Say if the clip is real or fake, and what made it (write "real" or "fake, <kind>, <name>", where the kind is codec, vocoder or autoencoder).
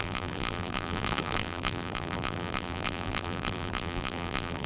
fake, vocoder, BigVGAN v2